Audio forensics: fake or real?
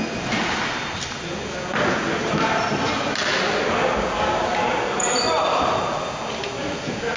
real